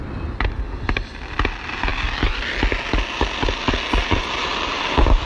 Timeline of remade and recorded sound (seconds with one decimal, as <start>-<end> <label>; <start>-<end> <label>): 0.0-5.3 recorded